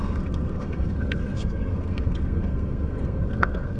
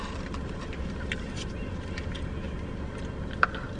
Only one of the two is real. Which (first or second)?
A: second